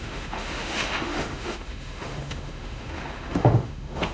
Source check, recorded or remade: remade